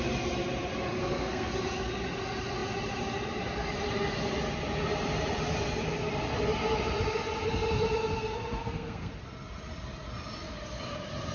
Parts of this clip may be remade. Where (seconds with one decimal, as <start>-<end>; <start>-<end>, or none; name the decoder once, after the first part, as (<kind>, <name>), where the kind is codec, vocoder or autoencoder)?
1.0-1.5 (codec, SNAC); 8.6-9.1